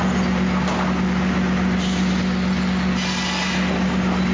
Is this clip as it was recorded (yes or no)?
yes